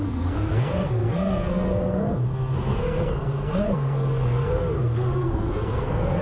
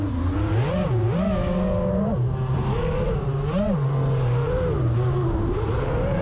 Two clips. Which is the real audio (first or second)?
second